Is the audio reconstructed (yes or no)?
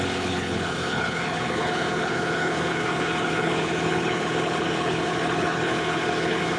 yes